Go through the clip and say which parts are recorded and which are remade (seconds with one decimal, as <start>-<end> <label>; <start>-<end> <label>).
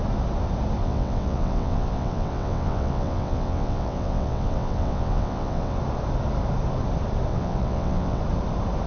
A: 0.0-0.8 recorded; 0.8-5.8 remade; 5.8-7.3 recorded; 7.3-8.2 remade; 8.2-8.9 recorded